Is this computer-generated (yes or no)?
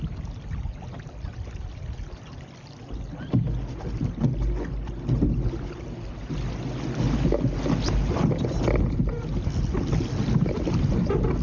no